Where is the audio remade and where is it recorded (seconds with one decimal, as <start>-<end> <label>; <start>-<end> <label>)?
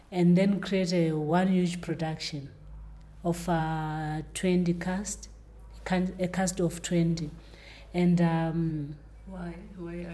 0.0-10.1 recorded